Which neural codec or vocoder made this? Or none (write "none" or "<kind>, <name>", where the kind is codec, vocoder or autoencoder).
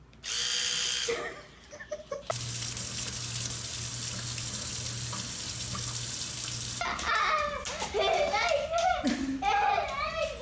none